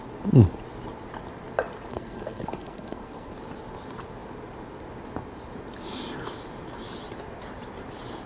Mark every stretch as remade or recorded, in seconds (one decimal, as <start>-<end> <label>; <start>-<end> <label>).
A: 0.0-1.9 recorded; 1.9-3.3 remade; 3.3-8.3 recorded